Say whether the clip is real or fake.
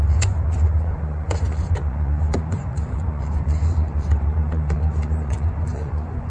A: fake